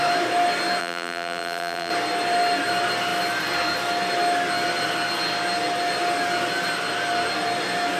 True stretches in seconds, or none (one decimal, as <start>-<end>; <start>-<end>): 0.0-0.8; 1.9-8.0